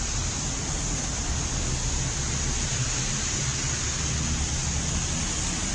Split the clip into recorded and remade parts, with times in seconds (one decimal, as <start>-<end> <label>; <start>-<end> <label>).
0.0-0.6 remade; 0.6-2.4 recorded; 2.4-3.5 remade; 3.5-5.7 recorded